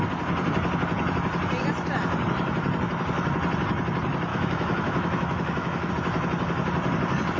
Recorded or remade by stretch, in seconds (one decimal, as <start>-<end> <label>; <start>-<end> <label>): 0.0-4.3 recorded; 4.3-5.9 remade; 5.9-7.4 recorded